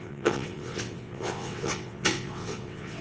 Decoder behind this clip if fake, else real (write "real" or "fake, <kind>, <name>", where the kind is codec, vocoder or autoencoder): fake, vocoder, WaveNeXt